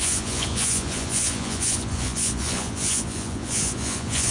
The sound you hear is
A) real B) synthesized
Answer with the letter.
B